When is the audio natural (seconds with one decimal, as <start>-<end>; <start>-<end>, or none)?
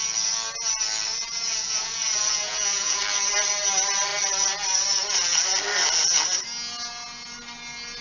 0.0-1.1; 3.0-8.0